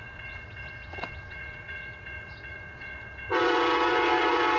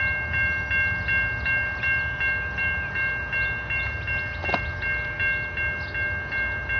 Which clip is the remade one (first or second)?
first